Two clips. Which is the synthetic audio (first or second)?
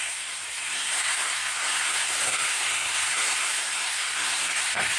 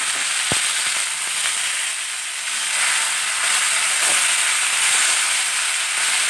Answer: first